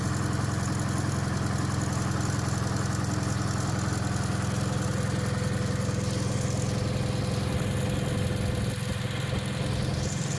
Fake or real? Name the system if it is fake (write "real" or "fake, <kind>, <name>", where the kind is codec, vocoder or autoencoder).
real